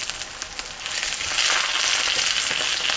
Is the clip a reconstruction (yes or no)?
no